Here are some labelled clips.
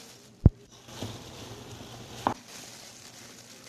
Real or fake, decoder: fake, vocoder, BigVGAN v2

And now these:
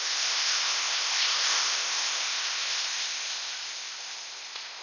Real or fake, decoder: fake, codec, ZipCodec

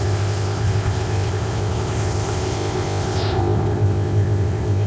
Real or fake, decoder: fake, codec, ZipCodec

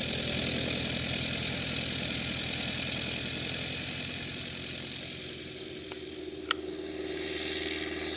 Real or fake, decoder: real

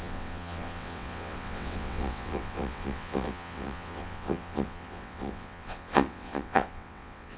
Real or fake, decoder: fake, vocoder, WaveNeXt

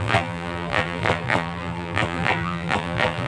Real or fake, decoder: fake, vocoder, BigVGAN v2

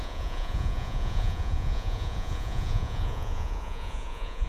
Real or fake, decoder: fake, vocoder, Vocos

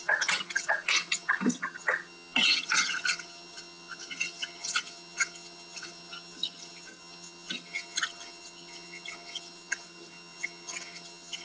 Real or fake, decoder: fake, vocoder, HiFi-GAN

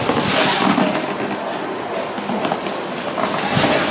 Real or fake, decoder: real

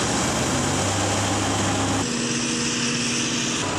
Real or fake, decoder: real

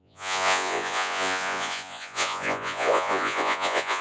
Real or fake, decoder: fake, vocoder, Vocos